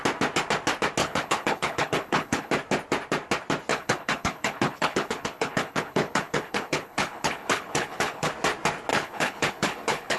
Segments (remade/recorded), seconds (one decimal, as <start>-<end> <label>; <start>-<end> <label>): 0.0-1.0 recorded; 1.0-2.5 remade; 2.5-3.7 recorded; 3.7-8.3 remade; 8.3-8.9 recorded; 8.9-10.2 remade